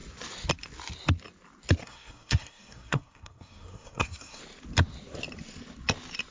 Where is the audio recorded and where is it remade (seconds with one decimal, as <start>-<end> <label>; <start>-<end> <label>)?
0.0-1.8 recorded; 1.8-4.4 remade; 4.4-6.3 recorded